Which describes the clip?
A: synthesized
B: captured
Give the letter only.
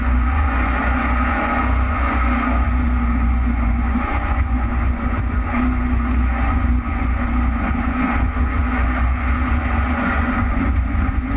A